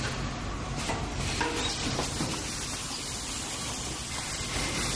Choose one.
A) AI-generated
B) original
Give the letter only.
B